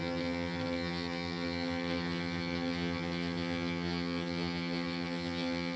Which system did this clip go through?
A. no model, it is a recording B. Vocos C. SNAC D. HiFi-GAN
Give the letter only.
D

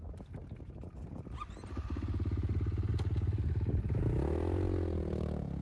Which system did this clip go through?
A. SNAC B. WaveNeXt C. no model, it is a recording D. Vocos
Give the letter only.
C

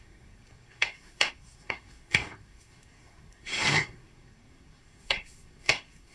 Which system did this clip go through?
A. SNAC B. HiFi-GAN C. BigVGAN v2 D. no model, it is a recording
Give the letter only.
A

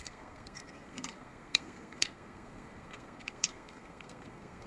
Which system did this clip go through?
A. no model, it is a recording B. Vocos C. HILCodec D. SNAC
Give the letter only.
D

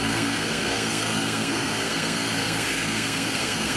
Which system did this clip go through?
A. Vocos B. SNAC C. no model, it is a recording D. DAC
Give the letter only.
B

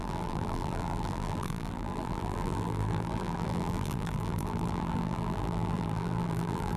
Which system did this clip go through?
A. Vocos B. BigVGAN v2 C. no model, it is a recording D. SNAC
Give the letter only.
B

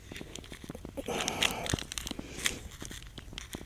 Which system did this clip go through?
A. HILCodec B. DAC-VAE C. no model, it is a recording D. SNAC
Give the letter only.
C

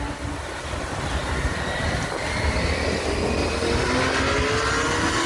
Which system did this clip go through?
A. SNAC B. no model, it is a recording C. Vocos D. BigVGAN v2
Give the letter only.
B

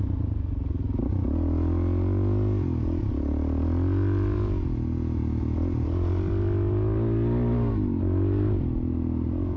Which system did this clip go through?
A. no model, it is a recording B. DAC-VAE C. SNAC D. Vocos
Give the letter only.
A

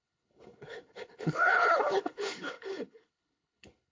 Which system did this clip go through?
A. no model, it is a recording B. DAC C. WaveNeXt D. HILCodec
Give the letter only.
D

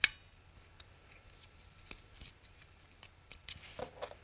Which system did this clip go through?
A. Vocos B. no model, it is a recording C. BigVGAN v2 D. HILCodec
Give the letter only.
B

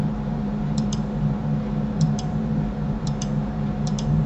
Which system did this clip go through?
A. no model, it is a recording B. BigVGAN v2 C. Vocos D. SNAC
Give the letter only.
B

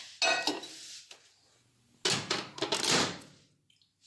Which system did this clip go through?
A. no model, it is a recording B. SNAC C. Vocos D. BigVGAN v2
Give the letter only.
A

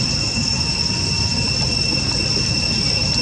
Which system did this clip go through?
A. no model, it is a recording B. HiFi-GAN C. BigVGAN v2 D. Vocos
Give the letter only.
A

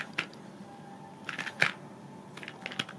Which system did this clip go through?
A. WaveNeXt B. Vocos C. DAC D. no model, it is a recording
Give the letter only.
D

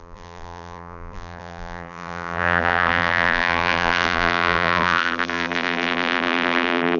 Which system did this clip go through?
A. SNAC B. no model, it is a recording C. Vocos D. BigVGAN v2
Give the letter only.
D